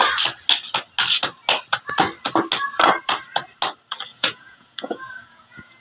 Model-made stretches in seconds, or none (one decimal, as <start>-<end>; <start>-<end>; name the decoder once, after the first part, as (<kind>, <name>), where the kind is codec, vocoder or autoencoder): 4.1-5.8 (vocoder, Vocos)